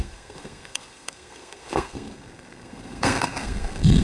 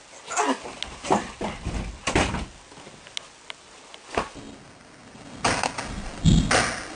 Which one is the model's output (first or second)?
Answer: first